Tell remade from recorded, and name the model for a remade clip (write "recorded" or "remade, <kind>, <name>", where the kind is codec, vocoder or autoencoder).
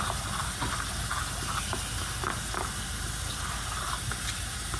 recorded